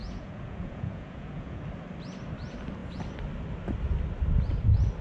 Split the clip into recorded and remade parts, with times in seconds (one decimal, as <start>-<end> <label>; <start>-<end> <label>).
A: 0.0-1.6 remade; 1.6-5.0 recorded